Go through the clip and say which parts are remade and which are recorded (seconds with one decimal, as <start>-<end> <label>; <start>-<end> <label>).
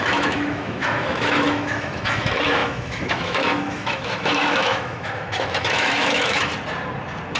0.0-6.5 remade; 6.5-7.4 recorded